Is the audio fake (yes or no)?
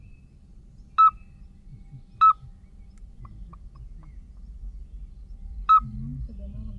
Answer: no